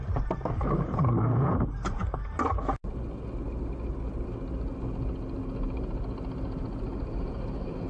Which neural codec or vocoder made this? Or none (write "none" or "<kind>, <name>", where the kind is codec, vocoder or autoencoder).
none